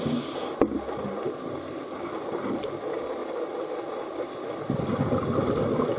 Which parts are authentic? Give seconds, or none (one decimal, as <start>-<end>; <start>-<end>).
0.0-6.0